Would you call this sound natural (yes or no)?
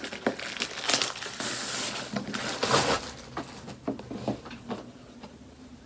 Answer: yes